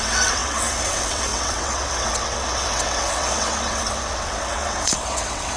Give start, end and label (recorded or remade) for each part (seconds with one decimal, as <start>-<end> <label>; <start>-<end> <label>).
0.0-5.6 remade